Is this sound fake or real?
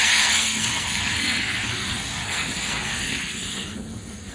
fake